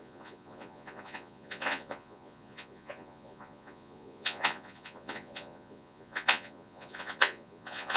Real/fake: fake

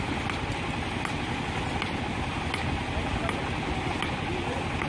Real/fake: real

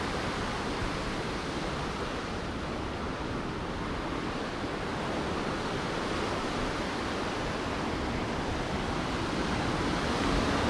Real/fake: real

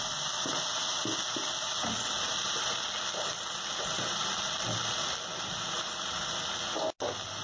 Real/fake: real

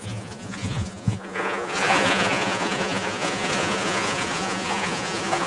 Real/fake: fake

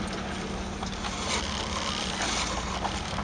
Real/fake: real